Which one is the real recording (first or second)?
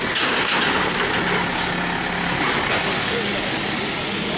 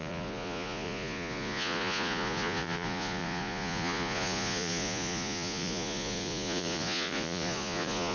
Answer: first